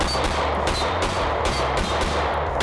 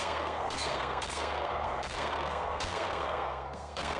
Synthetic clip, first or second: second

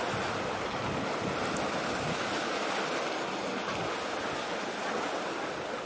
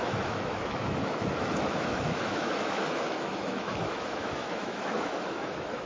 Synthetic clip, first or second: second